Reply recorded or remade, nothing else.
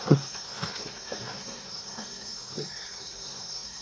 remade